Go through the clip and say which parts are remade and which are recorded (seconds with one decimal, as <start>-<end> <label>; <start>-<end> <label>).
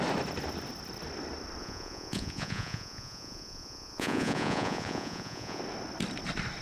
0.0-1.6 recorded; 1.6-5.6 remade; 5.6-6.6 recorded